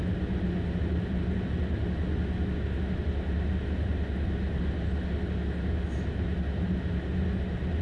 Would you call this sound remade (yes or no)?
no